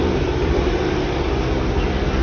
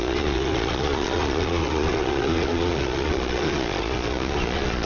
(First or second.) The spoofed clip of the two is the second